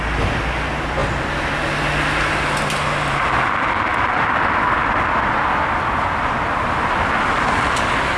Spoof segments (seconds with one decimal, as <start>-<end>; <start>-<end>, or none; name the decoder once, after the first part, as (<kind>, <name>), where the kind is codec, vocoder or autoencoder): none